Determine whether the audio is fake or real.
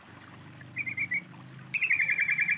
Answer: real